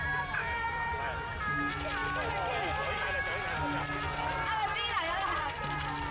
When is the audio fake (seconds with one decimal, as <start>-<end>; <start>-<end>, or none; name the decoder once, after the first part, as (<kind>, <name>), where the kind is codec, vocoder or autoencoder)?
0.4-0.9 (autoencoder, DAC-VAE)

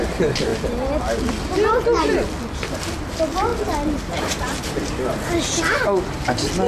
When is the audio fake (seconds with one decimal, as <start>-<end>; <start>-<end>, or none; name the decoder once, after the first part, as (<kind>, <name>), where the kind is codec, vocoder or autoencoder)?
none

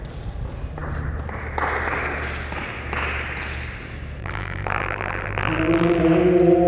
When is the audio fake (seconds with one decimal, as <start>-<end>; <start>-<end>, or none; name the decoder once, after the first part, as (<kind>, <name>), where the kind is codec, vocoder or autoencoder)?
4.2-6.0 (vocoder, BigVGAN v2)